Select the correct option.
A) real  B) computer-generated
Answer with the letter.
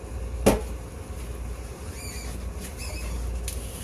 A